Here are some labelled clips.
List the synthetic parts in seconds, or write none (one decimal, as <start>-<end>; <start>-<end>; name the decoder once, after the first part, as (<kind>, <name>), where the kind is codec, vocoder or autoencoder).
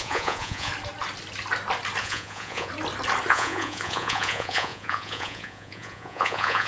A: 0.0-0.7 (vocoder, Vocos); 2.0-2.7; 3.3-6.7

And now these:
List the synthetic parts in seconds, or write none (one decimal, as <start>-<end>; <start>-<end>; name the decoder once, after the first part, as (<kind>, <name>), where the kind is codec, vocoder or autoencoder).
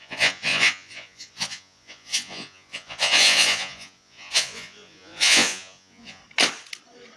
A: 0.0-6.2 (vocoder, Vocos)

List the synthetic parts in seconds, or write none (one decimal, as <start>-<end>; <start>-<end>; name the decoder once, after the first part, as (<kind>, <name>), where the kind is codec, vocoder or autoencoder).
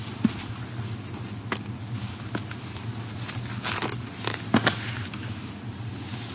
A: none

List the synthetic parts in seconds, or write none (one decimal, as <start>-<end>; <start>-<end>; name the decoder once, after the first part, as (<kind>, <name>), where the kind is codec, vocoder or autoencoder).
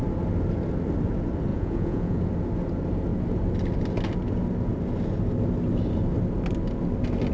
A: 1.5-2.2 (vocoder, Vocos)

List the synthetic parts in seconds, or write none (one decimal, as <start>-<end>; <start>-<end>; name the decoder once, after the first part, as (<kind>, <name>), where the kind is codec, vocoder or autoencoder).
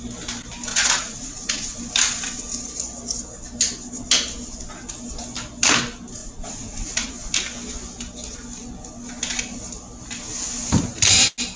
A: 0.7-1.8 (vocoder, Vocos); 6.2-7.1